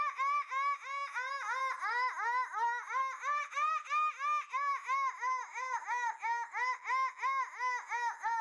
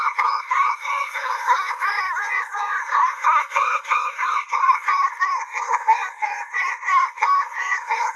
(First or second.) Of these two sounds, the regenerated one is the second